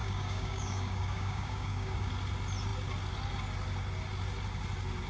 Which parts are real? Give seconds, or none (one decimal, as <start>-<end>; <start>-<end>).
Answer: 2.1-5.1